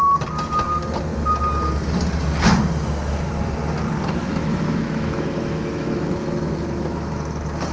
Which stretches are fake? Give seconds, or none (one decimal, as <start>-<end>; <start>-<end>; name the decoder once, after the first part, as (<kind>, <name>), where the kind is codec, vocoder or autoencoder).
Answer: 4.2-7.2 (autoencoder, DAC-VAE)